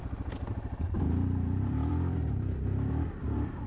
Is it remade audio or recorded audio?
remade